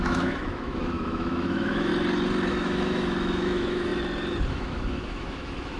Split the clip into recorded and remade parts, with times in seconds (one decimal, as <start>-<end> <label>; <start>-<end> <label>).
0.0-1.9 remade; 1.9-2.5 recorded; 2.5-3.9 remade; 3.9-4.5 recorded; 4.5-5.8 remade